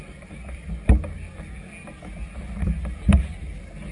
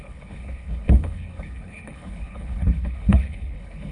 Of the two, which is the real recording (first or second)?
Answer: first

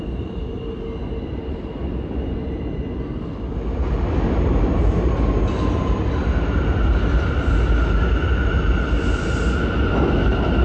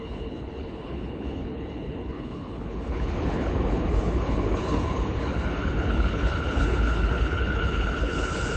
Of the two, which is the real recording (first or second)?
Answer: first